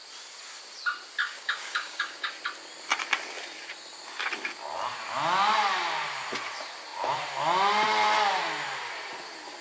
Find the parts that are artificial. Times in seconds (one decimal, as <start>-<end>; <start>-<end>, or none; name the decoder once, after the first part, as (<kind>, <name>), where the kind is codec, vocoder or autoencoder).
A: 1.2-2.3 (codec, DAC)